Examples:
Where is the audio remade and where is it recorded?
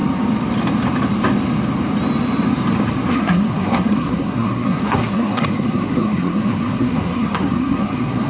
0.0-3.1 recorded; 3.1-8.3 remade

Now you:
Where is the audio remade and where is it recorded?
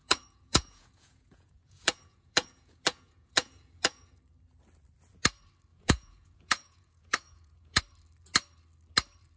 0.0-4.2 remade; 4.2-5.7 recorded; 5.7-7.8 remade; 7.8-9.4 recorded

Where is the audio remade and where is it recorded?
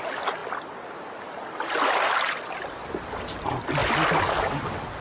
0.0-5.0 recorded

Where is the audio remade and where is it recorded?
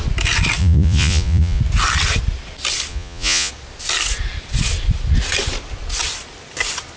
0.0-0.6 recorded; 0.6-1.6 remade; 1.6-2.9 recorded; 2.9-3.5 remade; 3.5-7.0 recorded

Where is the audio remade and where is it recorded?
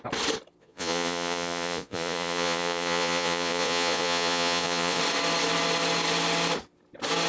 0.0-0.6 recorded; 0.6-5.0 remade; 5.0-7.3 recorded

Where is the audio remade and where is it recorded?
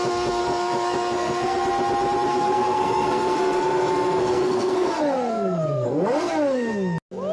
0.0-0.4 recorded; 0.4-1.6 remade; 1.6-2.3 recorded; 2.3-6.7 remade; 6.7-7.3 recorded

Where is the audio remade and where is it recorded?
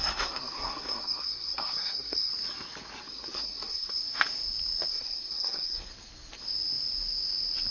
0.0-2.3 remade; 2.3-3.1 recorded; 3.1-4.0 remade; 4.0-4.9 recorded; 4.9-5.9 remade; 5.9-7.7 recorded